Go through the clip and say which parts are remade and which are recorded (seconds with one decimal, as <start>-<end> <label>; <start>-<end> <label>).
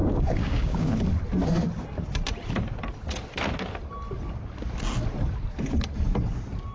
0.0-0.9 remade; 0.9-6.7 recorded